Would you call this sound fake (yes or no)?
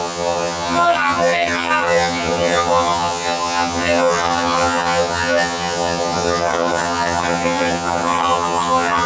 yes